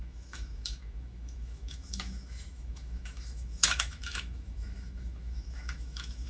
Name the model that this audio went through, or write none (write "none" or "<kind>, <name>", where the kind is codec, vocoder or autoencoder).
autoencoder, DAC-VAE